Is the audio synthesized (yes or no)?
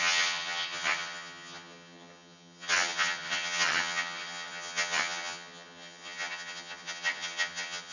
yes